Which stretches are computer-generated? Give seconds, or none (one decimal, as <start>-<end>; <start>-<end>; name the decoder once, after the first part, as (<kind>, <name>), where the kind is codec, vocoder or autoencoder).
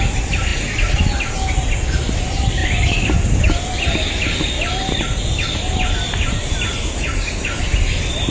none